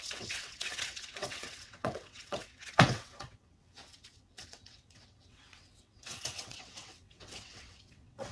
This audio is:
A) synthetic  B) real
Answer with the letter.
A